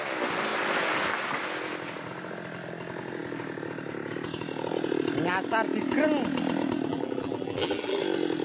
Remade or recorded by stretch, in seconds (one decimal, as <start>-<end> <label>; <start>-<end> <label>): 0.0-6.9 recorded; 6.9-8.0 remade; 8.0-8.4 recorded